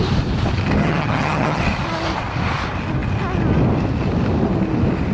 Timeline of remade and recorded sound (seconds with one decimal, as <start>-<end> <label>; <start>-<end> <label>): 0.0-0.8 recorded; 0.8-1.6 remade; 1.6-5.1 recorded